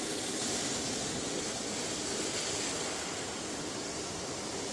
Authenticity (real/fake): real